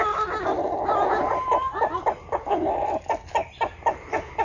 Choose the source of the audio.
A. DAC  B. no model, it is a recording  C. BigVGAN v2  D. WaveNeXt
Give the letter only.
B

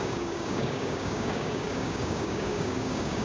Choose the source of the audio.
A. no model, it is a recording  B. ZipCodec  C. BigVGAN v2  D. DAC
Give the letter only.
D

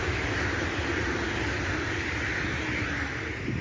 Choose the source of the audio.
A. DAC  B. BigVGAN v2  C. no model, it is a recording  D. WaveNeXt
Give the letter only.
C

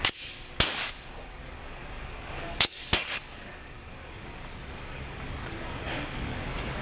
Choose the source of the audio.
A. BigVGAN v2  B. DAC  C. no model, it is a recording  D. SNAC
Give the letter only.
B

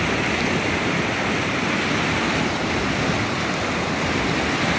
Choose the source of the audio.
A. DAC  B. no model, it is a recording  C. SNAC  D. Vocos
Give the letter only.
B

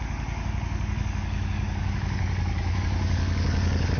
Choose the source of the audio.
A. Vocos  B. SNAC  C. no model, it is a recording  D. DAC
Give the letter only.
D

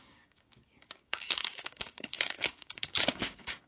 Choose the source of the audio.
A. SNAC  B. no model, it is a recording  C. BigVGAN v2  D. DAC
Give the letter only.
D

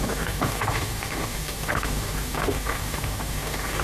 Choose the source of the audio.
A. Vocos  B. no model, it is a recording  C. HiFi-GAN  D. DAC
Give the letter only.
D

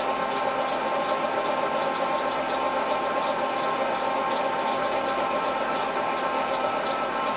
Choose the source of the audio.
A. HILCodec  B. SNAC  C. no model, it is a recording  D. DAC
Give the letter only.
C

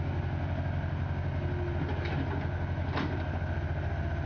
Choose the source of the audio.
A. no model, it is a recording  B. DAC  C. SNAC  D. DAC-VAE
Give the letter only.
A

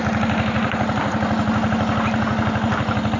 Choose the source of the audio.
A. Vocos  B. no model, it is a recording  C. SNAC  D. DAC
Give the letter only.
B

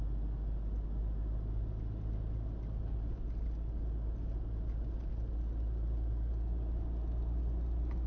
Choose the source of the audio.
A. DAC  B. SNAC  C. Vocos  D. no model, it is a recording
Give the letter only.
D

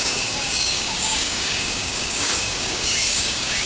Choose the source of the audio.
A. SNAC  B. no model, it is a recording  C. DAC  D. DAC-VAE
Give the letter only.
C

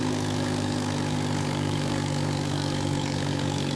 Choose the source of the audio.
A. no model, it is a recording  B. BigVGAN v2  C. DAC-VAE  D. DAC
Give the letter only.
D